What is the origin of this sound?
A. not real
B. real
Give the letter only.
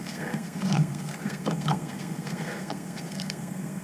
A